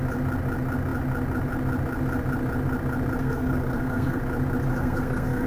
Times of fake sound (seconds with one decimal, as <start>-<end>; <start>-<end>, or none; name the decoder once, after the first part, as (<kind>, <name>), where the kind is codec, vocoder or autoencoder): 3.2-4.2 (codec, SNAC); 4.7-5.5